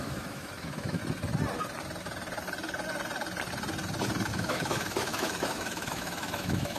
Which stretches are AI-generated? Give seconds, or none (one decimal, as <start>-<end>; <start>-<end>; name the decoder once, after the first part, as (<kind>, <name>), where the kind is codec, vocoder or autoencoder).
0.0-1.0 (autoencoder, DAC-VAE); 4.3-6.8